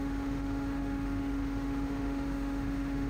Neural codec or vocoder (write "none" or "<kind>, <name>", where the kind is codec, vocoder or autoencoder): autoencoder, DAC-VAE